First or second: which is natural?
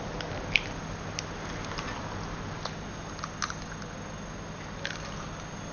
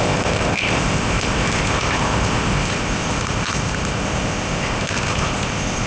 first